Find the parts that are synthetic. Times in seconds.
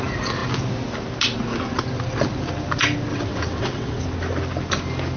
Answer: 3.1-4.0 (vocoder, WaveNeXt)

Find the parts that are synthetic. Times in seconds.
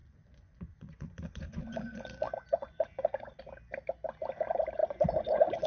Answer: 0.0-3.4 (vocoder, Vocos); 4.8-5.7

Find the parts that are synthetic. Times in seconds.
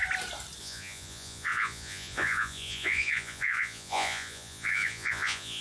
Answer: 0.6-5.6 (vocoder, Vocos)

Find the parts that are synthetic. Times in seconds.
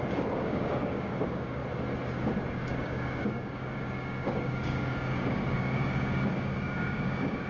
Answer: 0.0-1.6 (codec, DAC); 2.5-7.5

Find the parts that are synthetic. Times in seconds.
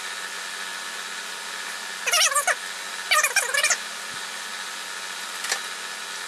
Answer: none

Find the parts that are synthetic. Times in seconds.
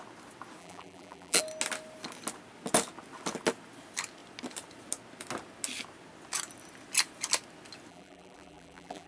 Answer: 0.6-1.4 (vocoder, BigVGAN v2); 7.9-9.1